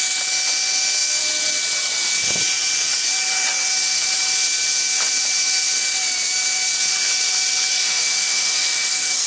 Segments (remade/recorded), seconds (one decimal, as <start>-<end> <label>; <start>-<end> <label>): 0.0-7.7 recorded; 7.7-9.3 remade